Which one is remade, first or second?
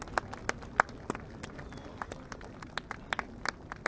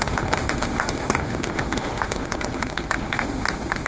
second